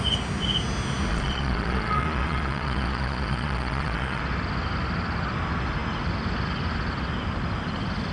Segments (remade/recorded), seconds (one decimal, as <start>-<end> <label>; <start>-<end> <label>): 0.0-1.1 recorded; 1.1-4.2 remade; 4.2-8.1 recorded